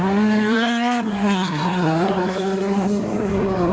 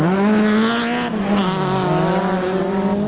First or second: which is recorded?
second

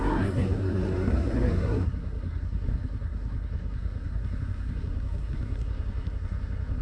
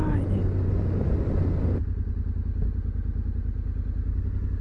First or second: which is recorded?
second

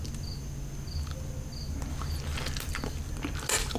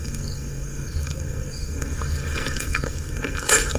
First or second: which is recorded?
first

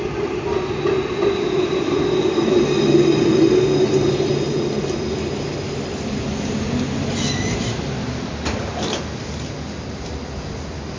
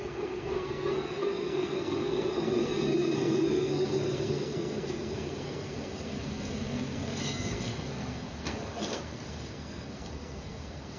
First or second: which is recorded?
first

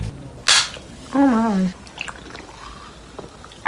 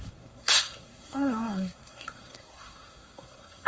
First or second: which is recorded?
first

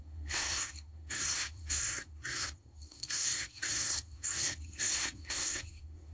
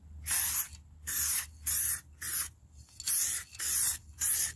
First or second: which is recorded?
second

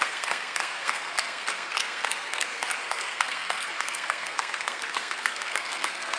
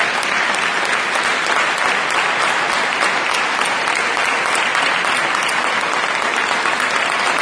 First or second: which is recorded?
second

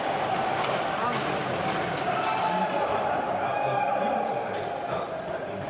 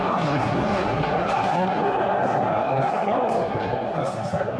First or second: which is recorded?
first